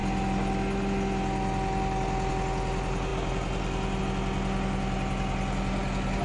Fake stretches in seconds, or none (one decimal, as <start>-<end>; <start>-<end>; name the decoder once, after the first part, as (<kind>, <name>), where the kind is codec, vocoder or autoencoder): none